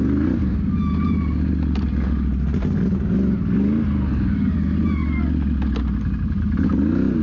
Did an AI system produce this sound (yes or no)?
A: no